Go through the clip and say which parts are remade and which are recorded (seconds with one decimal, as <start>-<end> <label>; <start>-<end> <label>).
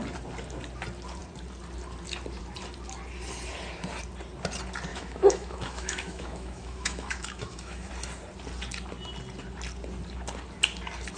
0.0-4.9 recorded; 4.9-7.9 remade; 7.9-11.2 recorded